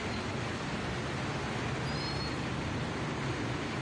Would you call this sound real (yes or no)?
yes